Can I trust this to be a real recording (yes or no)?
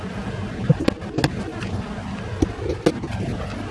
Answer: yes